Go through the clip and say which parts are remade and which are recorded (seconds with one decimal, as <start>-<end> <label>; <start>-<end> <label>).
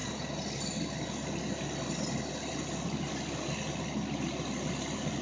0.0-5.2 recorded